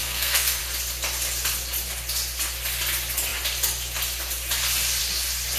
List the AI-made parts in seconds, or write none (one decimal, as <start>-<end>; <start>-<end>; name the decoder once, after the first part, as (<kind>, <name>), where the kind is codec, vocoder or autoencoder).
0.0-0.6 (codec, SNAC)